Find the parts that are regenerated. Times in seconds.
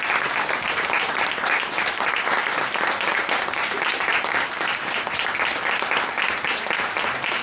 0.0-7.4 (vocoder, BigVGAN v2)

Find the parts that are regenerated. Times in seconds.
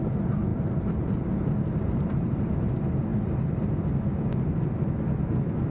0.5-2.7 (vocoder, BigVGAN v2)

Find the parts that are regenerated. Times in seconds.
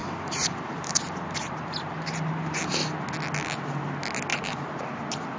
0.0-2.7 (vocoder, BigVGAN v2); 4.3-4.8